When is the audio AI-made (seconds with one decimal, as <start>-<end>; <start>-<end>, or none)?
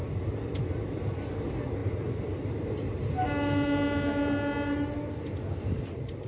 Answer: 0.0-0.6; 1.8-2.6